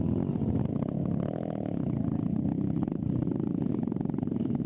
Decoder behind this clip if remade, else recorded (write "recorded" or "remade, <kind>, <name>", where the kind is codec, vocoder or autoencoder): recorded